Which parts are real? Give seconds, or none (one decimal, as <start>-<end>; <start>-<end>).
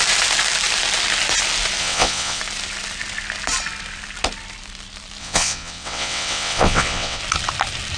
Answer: 0.0-1.8; 2.4-5.2; 7.2-8.0